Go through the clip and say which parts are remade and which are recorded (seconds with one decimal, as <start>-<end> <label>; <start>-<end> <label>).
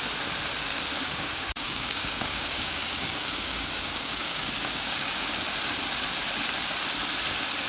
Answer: 0.0-0.9 recorded; 0.9-5.3 remade; 5.3-7.7 recorded